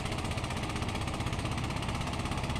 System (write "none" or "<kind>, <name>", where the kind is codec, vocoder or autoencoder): vocoder, BigVGAN v2